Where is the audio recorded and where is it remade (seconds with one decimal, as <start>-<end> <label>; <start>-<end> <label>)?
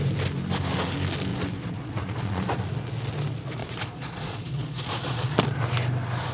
0.0-1.3 recorded; 1.3-2.6 remade; 2.6-3.6 recorded; 3.6-5.3 remade; 5.3-6.3 recorded